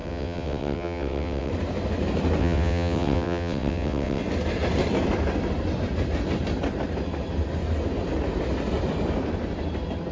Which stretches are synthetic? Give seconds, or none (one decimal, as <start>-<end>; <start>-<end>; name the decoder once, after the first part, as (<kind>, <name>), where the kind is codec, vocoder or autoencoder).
0.0-1.5 (vocoder, WaveNeXt); 2.4-4.2

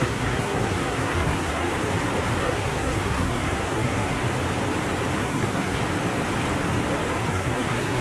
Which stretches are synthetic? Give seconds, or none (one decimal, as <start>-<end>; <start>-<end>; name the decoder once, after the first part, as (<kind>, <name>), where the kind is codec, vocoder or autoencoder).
0.0-1.7 (codec, SNAC); 2.4-4.2; 5.2-5.8; 7.3-8.0

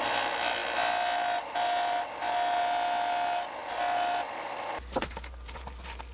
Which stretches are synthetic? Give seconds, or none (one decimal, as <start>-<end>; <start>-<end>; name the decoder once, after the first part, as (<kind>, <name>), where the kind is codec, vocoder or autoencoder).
none